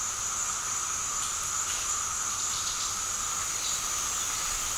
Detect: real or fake real